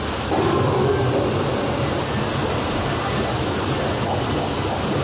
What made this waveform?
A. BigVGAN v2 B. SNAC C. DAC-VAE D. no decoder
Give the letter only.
D